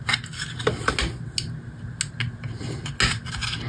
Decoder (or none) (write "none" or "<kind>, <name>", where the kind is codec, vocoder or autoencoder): none